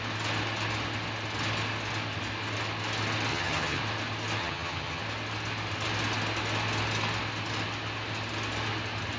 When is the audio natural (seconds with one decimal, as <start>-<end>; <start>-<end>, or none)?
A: 0.0-3.3; 3.8-4.4; 5.0-9.2